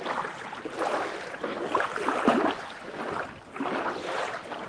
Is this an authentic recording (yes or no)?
yes